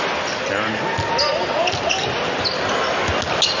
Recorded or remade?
recorded